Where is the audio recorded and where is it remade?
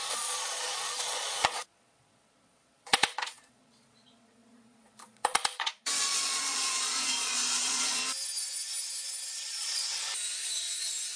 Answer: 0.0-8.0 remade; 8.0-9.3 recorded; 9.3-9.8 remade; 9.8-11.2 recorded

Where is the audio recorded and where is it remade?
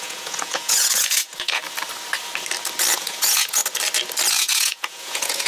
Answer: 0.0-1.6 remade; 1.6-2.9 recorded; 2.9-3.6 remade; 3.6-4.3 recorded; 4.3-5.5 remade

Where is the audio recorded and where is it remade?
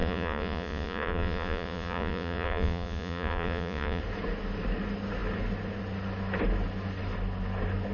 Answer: 0.0-4.0 remade; 4.0-7.9 recorded